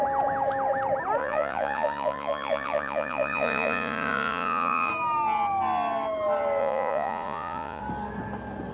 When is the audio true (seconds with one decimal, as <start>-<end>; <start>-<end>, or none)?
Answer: 0.0-1.2; 4.9-6.6; 7.8-8.7